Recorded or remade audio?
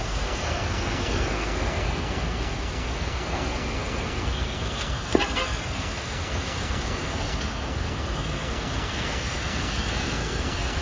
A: remade